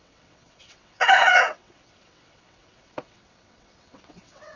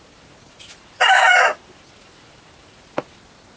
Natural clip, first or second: second